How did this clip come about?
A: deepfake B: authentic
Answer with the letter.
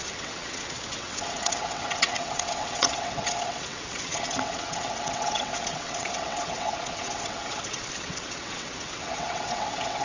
A